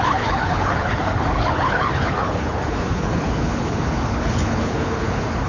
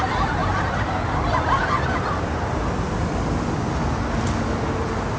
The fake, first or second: first